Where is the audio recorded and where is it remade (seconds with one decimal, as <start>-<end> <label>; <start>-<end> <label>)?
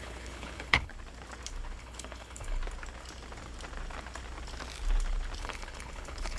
0.0-0.9 remade; 0.9-1.8 recorded; 1.8-2.6 remade; 2.6-5.4 recorded; 5.4-6.4 remade